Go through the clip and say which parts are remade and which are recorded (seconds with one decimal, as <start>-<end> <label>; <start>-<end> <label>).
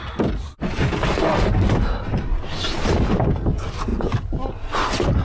0.0-5.2 recorded